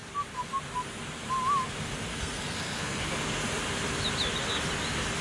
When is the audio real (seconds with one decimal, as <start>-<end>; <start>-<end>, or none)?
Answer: 0.0-2.1; 3.0-5.2